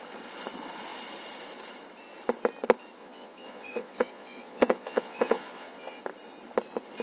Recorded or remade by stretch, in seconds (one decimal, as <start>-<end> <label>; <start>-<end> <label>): 0.0-3.0 recorded; 3.0-6.0 remade; 6.0-7.0 recorded

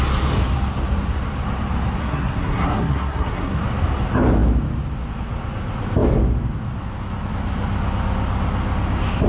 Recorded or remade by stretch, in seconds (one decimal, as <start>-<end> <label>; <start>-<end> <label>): 0.0-2.0 recorded; 2.0-3.6 remade; 3.6-9.3 recorded

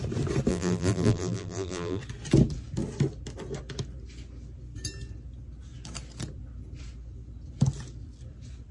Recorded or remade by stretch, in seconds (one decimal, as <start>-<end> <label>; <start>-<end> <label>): 0.0-0.5 recorded; 0.5-2.0 remade; 2.0-8.7 recorded

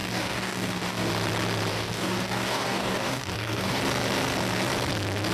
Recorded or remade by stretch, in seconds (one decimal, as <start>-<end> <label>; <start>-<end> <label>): 0.0-1.1 remade; 1.1-1.7 recorded; 1.7-3.8 remade; 3.8-5.3 recorded

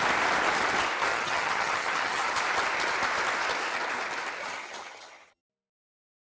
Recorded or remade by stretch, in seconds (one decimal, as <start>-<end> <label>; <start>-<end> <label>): 0.0-1.1 recorded; 1.1-2.3 remade; 2.3-4.4 recorded; 4.4-5.4 remade; 5.4-6.3 recorded

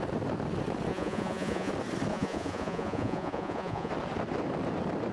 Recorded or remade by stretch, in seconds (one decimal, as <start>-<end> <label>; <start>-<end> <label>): 0.0-0.9 recorded; 0.9-1.7 remade; 1.7-2.1 recorded; 2.1-3.9 remade; 3.9-5.1 recorded